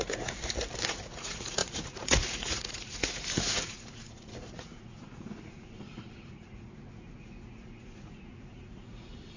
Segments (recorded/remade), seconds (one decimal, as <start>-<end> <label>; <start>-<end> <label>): 0.0-0.4 remade; 0.4-0.9 recorded; 0.9-9.4 remade